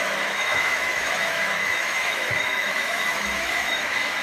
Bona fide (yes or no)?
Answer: no